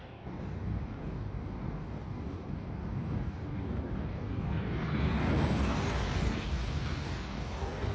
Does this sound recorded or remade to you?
remade